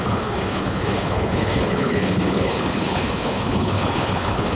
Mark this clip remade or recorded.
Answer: remade